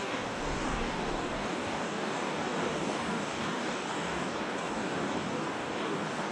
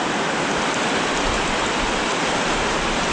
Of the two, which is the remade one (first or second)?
first